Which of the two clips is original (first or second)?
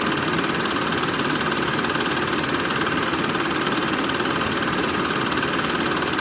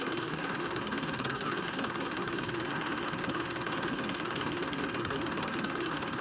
first